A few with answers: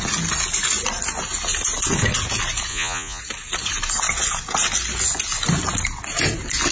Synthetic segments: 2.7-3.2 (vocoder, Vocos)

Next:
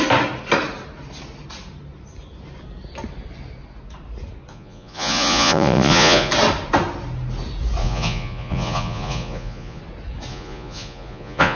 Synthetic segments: 4.5-6.3 (vocoder, Vocos); 7.8-9.8; 10.3-11.6